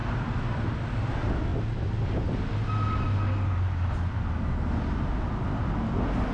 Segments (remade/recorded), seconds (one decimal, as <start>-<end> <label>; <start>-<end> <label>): 0.0-1.1 remade; 1.1-6.3 recorded